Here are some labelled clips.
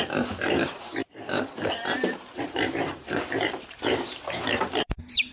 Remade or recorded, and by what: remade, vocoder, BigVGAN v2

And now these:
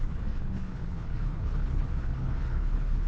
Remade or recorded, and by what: remade, codec, HILCodec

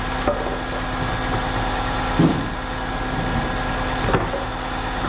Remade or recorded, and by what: recorded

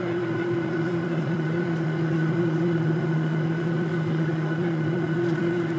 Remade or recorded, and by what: remade, vocoder, Vocos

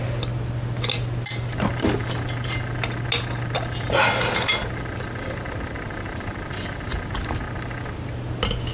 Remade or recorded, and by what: recorded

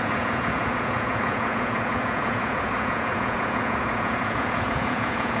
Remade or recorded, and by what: remade, vocoder, Vocos